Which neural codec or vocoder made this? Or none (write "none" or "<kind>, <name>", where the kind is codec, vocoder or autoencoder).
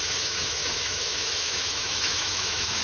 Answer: autoencoder, DAC-VAE